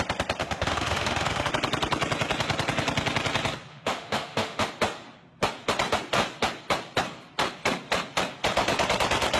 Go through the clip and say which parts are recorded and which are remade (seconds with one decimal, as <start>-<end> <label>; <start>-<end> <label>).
0.0-0.4 recorded; 0.4-1.5 remade; 1.5-3.7 recorded; 3.7-4.7 remade; 4.7-9.4 recorded